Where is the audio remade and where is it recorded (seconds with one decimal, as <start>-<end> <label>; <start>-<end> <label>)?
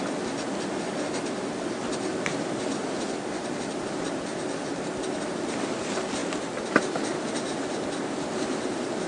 0.0-9.1 recorded